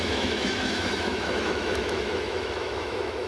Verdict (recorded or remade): remade